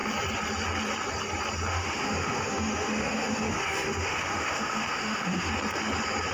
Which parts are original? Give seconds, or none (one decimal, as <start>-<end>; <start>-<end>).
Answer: 0.0-1.7; 5.5-6.3